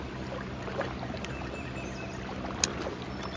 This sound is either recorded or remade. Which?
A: recorded